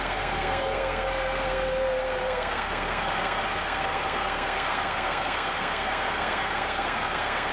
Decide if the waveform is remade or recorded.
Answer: remade